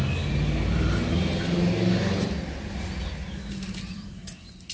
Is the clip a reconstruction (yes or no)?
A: no